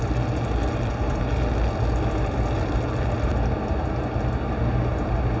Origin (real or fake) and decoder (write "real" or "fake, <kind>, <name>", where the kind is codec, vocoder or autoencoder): real